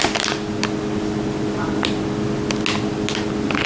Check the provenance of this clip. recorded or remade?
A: recorded